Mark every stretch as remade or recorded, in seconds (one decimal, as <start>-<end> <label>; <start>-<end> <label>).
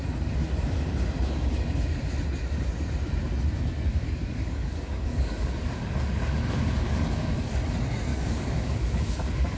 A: 0.0-3.9 recorded; 3.9-7.5 remade; 7.5-8.1 recorded; 8.1-9.6 remade